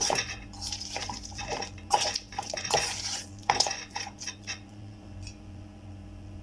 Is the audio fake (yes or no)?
yes